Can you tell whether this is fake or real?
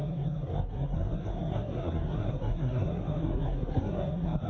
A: fake